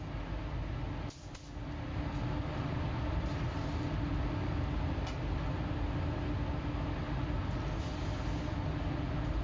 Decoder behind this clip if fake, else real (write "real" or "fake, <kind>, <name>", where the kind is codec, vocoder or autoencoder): real